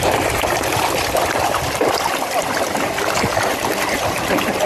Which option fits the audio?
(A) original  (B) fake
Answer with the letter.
B